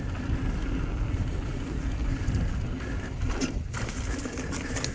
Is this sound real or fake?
real